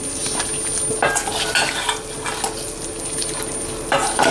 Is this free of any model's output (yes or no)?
yes